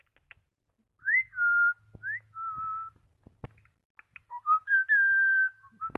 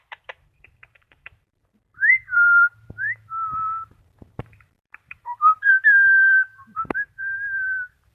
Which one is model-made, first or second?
second